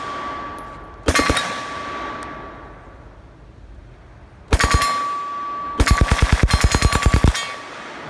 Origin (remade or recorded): recorded